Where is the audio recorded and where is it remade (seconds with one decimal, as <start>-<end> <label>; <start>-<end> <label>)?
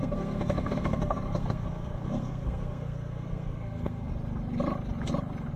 0.0-4.1 remade; 4.1-5.6 recorded